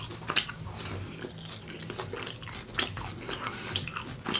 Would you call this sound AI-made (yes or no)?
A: no